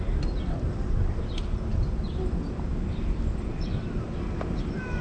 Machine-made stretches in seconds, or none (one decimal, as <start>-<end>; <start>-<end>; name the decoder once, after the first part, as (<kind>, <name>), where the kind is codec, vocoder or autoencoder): none